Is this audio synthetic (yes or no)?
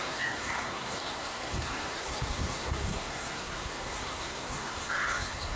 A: yes